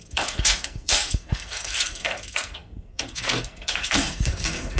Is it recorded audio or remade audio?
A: remade